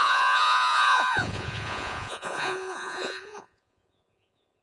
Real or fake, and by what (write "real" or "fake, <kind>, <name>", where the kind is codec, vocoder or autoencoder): fake, vocoder, Vocos